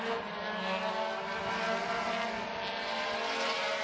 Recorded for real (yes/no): yes